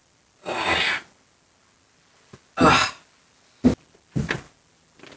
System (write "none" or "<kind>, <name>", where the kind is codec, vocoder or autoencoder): none